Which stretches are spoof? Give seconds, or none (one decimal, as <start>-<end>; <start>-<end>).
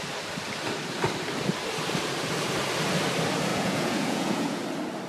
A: 3.5-4.6